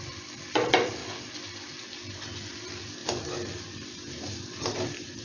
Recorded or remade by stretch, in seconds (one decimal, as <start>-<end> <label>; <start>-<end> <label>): 0.0-1.0 remade; 1.0-2.5 recorded; 2.5-3.0 remade; 3.0-3.6 recorded; 3.6-5.2 remade

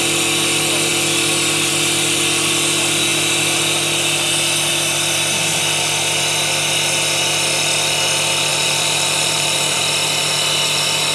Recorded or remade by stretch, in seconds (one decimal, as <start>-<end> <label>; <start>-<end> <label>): 0.0-8.5 recorded; 8.5-9.8 remade; 9.8-11.1 recorded

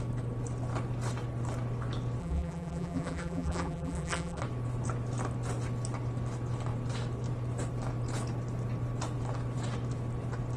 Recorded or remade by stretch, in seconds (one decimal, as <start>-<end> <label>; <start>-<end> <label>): 0.0-2.2 recorded; 2.2-4.4 remade; 4.4-10.6 recorded

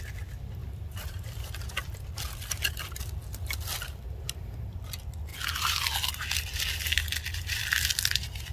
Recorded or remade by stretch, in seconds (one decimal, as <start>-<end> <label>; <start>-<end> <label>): 0.0-0.6 recorded; 0.6-2.7 remade; 2.7-8.5 recorded

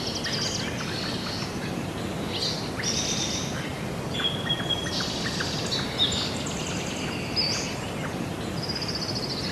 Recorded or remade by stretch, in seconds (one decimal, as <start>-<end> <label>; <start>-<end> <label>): 0.0-3.7 recorded; 3.7-4.2 remade; 4.2-9.5 recorded

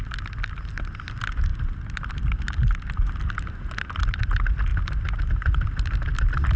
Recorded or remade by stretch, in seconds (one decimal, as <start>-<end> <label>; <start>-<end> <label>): 0.0-6.6 recorded

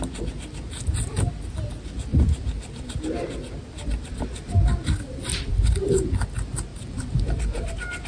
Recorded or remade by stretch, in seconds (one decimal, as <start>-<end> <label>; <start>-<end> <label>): 0.0-2.1 recorded; 2.1-3.0 remade; 3.0-5.3 recorded; 5.3-5.9 remade; 5.9-6.7 recorded; 6.7-8.1 remade

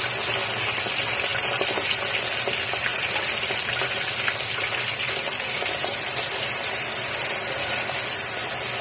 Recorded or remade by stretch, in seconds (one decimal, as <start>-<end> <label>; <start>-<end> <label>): 0.0-2.9 recorded; 2.9-7.4 remade; 7.4-8.8 recorded